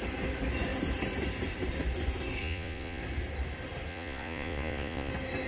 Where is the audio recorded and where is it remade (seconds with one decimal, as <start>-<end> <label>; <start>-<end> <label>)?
0.0-2.4 recorded; 2.4-3.0 remade; 3.0-3.9 recorded; 3.9-5.1 remade; 5.1-5.5 recorded